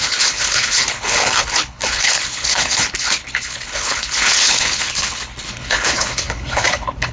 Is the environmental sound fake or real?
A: fake